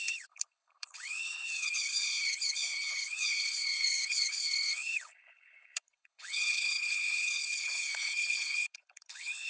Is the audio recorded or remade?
remade